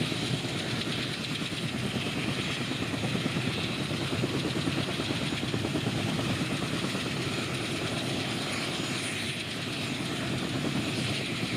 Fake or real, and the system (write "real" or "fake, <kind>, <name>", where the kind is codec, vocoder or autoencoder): real